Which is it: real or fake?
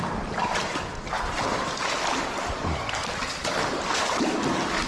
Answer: real